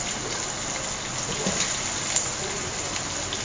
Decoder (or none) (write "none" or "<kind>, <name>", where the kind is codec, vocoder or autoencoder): none